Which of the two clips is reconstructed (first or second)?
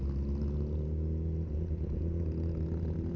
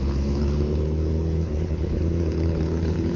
second